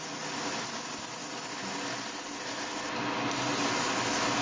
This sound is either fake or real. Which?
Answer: real